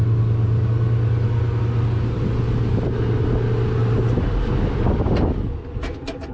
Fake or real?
real